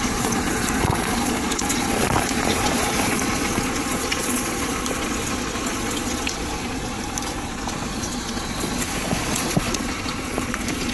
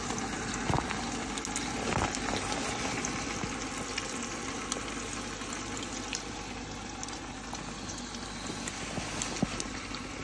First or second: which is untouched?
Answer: second